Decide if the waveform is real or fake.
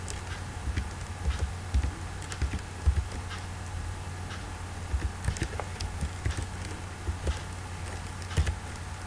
real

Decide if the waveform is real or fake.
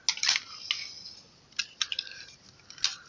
real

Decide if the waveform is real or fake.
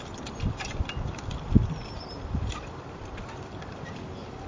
fake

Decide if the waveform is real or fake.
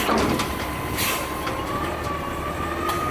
real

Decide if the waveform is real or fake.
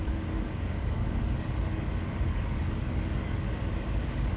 fake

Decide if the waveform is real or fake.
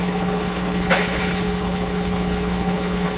fake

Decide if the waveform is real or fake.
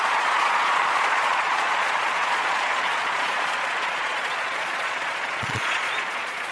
fake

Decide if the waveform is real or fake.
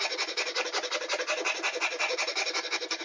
real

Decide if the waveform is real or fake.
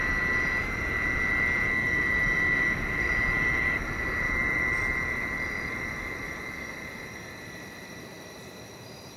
fake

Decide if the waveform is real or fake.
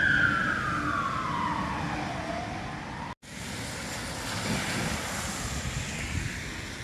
real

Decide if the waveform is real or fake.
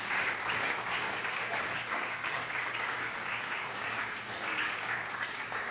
fake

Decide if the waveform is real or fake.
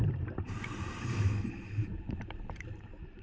fake